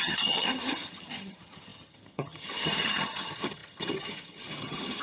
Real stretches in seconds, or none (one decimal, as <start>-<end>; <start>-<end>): none